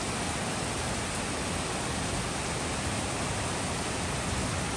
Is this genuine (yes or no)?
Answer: yes